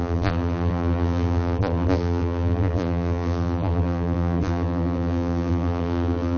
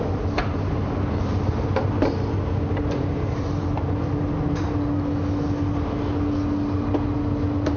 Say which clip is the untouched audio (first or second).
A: second